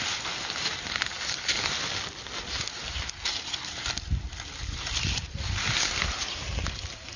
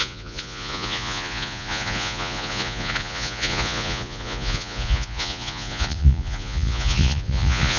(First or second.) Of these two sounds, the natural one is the first